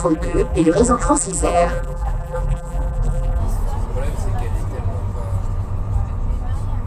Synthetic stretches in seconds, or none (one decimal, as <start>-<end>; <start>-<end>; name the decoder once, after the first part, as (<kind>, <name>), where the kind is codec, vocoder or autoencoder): 0.0-3.4 (vocoder, BigVGAN v2)